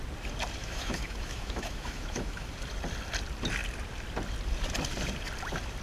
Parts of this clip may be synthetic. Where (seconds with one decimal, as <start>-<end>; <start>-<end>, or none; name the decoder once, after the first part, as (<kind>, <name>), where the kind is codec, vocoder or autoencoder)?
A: 0.6-2.5 (autoencoder, DAC-VAE)